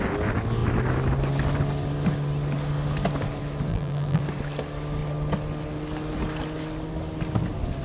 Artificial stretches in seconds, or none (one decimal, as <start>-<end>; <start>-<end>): 3.7-4.2